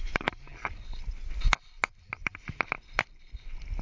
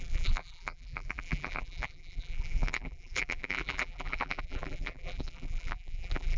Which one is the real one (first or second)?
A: first